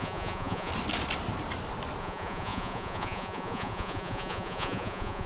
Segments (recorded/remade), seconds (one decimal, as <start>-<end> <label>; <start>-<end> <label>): 0.0-0.7 remade; 0.7-2.0 recorded; 2.0-5.3 remade